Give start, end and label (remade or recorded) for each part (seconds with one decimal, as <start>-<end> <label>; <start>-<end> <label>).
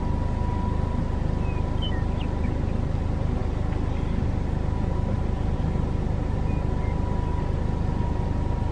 0.0-8.7 recorded